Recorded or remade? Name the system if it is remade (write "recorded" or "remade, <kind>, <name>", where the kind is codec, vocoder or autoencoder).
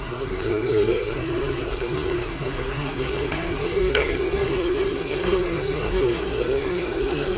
remade, codec, SNAC